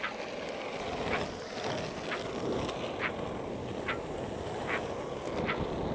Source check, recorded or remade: recorded